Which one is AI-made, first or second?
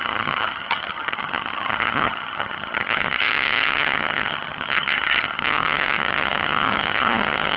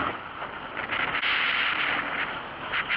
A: first